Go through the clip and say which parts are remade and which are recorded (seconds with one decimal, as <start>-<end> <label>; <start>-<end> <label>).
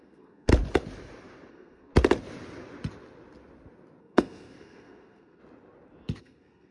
0.0-0.5 remade; 0.5-1.5 recorded; 1.5-1.9 remade; 1.9-4.0 recorded; 4.0-5.4 remade; 5.4-6.2 recorded; 6.2-6.7 remade